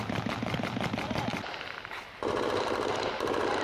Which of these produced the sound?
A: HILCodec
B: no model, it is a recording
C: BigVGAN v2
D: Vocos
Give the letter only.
B